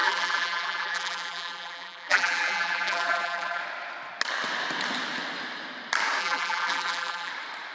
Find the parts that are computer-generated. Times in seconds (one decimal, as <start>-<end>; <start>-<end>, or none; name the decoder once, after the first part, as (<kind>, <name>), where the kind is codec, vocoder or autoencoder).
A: 0.0-3.6 (vocoder, BigVGAN v2); 6.2-7.3